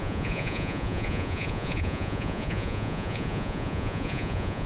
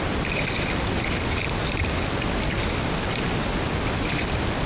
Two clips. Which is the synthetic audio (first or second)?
first